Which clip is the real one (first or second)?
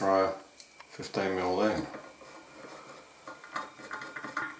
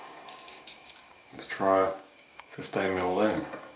first